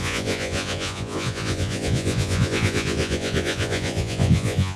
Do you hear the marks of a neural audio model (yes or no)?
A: yes